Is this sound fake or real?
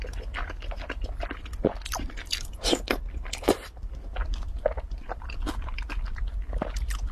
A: real